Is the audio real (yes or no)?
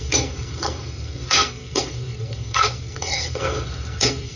no